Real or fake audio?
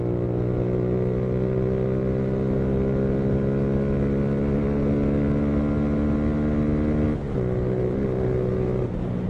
real